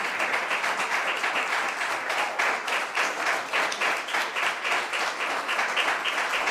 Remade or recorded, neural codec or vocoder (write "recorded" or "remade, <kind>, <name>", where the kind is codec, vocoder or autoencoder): recorded